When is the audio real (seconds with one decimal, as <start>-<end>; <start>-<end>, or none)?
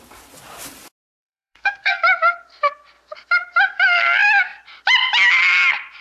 0.0-1.2; 2.0-6.0